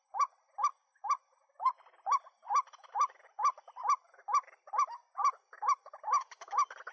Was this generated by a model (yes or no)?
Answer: no